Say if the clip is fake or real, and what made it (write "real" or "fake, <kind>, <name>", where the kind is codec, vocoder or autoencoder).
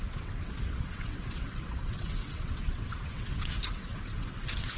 fake, vocoder, WaveNeXt